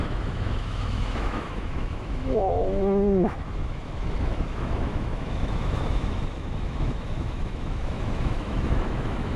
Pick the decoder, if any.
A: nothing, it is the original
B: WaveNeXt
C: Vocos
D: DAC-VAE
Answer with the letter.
D